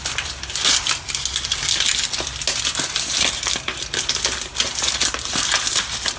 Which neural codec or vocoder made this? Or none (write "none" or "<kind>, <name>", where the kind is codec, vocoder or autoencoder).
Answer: none